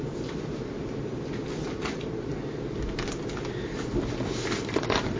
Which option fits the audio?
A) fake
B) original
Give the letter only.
B